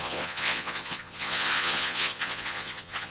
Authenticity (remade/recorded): remade